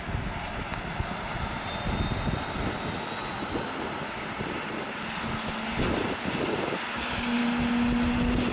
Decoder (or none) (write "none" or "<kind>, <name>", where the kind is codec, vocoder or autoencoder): none